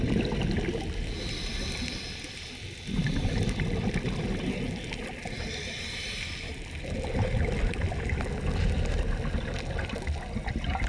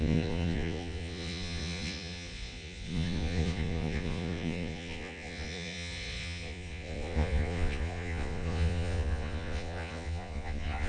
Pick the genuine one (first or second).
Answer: first